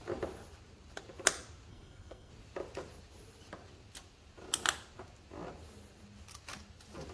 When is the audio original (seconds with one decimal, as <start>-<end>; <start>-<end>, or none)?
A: 0.0-1.7; 2.3-7.1